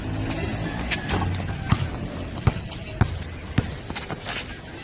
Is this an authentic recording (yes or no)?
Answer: yes